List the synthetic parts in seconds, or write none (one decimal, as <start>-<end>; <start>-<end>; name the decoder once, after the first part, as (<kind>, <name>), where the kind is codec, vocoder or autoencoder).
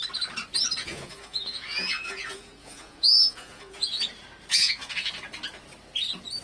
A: 0.8-4.0 (vocoder, Vocos); 4.5-5.1